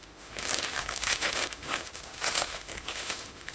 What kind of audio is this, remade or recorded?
remade